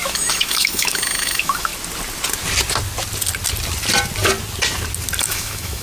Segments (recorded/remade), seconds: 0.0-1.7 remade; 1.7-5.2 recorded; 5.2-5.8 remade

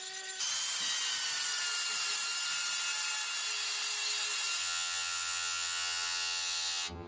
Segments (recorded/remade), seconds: 0.0-4.6 recorded; 4.6-7.1 remade